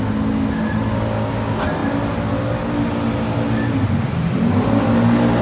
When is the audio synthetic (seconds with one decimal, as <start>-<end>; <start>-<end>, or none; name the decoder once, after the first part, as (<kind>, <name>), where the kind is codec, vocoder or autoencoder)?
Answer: none